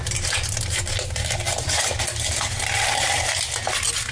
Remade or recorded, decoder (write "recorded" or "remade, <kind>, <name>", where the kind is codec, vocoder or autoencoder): recorded